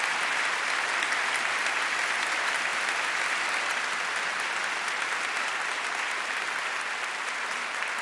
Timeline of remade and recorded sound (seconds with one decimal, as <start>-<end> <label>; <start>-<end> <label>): 0.0-8.0 recorded